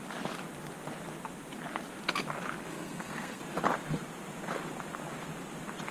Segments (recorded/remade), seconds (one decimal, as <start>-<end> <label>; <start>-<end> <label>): 0.0-2.7 recorded; 2.7-3.4 remade; 3.4-5.9 recorded